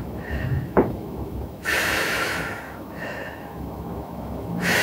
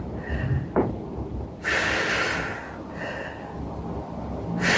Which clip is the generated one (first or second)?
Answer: first